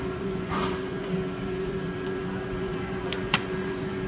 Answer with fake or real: fake